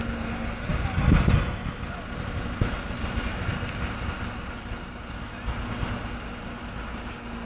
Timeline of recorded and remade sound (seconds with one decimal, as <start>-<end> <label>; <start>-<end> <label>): 0.0-7.5 recorded